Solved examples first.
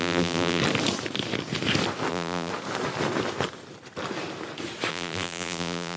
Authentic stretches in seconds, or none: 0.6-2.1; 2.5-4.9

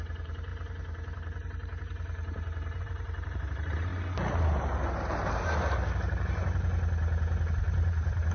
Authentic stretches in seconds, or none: 0.5-2.8; 3.9-7.5